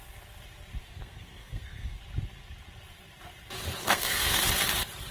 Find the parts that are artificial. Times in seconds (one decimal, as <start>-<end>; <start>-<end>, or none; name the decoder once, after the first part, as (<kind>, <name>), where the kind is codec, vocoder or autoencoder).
0.8-2.0 (codec, SNAC); 3.8-4.4